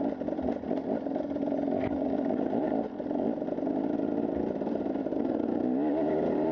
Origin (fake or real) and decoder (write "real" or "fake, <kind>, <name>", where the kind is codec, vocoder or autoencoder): real